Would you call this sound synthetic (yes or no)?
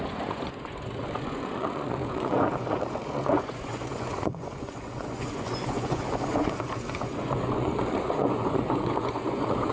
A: yes